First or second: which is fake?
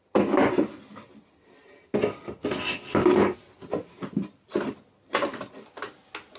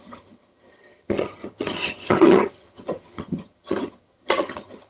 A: second